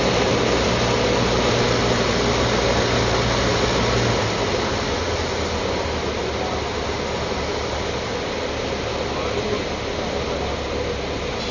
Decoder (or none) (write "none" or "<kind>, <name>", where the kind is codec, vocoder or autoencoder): none